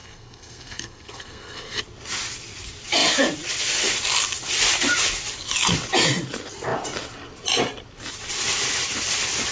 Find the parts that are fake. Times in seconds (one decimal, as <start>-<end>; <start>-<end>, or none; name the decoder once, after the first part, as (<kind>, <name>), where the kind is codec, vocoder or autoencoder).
0.0-1.8 (codec, SNAC)